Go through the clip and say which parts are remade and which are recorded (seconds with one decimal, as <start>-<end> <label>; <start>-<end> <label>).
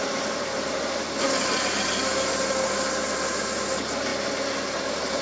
0.0-5.2 recorded